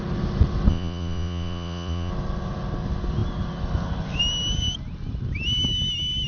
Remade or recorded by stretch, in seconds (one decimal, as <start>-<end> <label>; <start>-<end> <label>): 0.0-0.7 recorded; 0.7-2.1 remade; 2.1-6.3 recorded